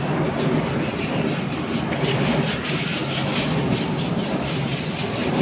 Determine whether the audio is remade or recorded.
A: recorded